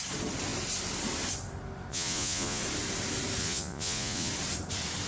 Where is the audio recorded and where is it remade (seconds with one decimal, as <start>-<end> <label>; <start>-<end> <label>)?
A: 0.0-1.9 recorded; 1.9-2.6 remade; 2.6-3.4 recorded; 3.4-4.3 remade; 4.3-5.1 recorded